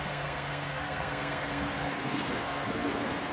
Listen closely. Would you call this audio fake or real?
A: fake